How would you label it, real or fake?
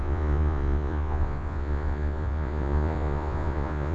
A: fake